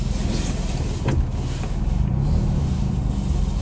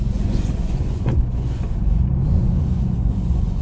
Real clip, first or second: first